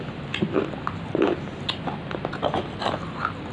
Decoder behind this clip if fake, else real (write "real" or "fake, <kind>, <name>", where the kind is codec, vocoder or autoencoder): real